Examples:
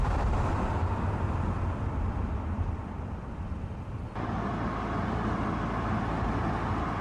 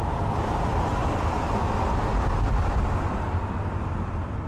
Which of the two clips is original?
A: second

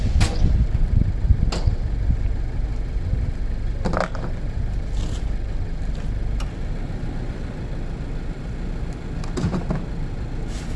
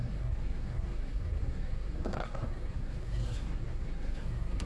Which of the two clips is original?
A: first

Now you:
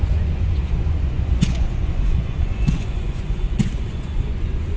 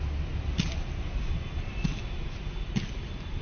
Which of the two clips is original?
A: second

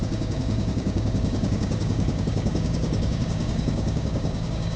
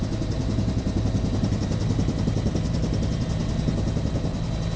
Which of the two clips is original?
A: second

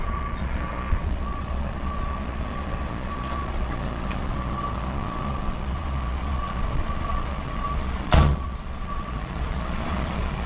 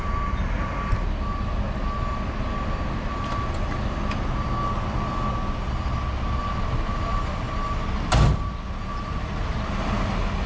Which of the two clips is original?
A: second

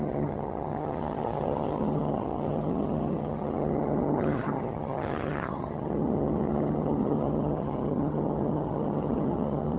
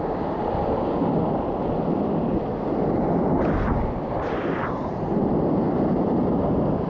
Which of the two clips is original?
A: second